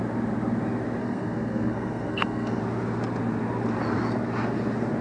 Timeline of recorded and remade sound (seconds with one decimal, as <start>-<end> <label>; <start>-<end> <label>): 0.0-1.0 recorded; 1.0-2.6 remade; 2.6-5.0 recorded